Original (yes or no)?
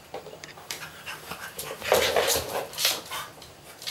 no